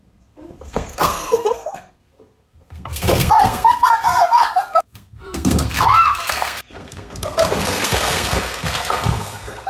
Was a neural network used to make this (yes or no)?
yes